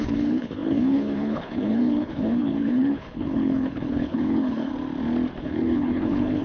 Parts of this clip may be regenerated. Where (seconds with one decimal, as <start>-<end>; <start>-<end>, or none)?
0.0-4.7; 5.4-6.4